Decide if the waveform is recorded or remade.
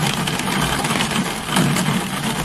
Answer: recorded